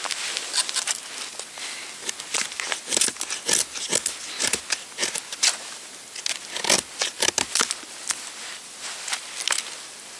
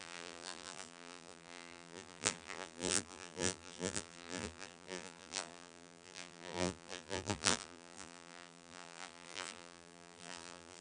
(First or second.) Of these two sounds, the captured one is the first